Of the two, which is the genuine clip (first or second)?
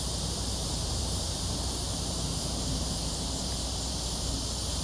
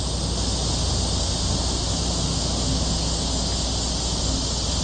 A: second